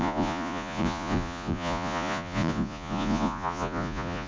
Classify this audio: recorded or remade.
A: remade